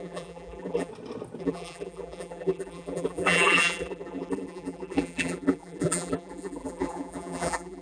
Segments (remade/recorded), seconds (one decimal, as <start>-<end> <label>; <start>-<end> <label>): 0.0-0.9 remade; 0.9-1.4 recorded; 1.4-7.8 remade